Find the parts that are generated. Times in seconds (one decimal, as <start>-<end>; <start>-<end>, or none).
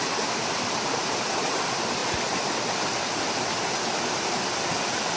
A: none